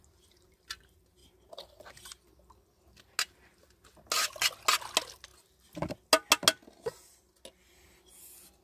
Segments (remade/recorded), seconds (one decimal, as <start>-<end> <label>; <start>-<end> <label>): 0.0-8.6 recorded